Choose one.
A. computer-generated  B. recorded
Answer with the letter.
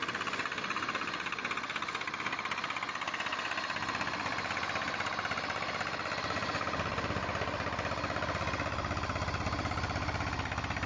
B